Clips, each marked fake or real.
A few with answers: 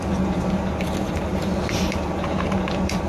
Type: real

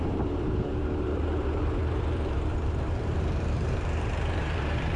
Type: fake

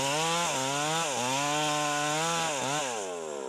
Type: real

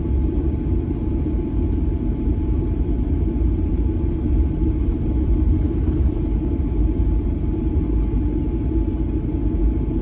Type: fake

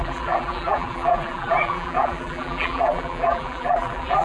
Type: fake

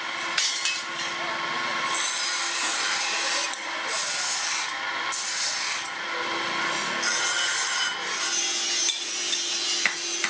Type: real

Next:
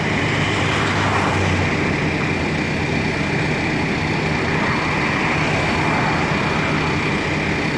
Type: real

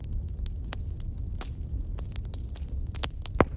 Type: real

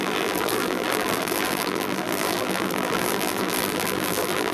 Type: fake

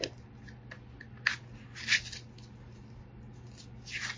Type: real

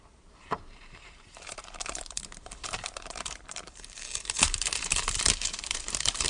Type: fake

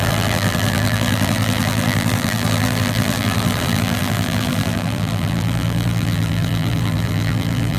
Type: fake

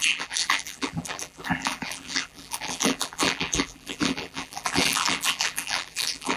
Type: fake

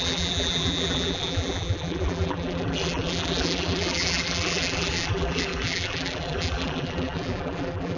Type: fake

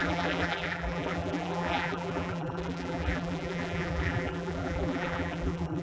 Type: fake